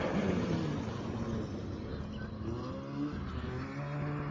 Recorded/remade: recorded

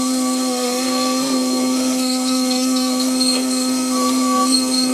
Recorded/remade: remade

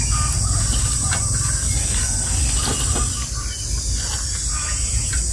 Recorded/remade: recorded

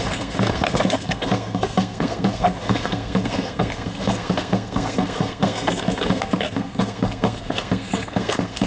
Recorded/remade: remade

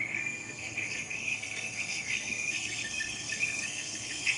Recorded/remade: remade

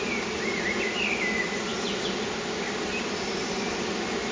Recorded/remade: recorded